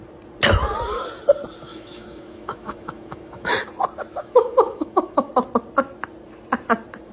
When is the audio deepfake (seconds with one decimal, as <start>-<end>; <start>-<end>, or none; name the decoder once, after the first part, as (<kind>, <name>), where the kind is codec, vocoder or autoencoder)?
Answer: 1.7-3.5 (autoencoder, DAC-VAE); 4.2-5.3